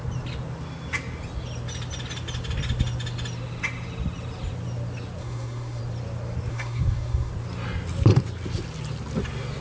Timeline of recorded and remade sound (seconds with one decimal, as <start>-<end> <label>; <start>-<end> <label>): 0.0-5.2 recorded; 5.2-5.8 remade; 5.8-6.5 recorded; 6.5-7.3 remade; 7.3-9.6 recorded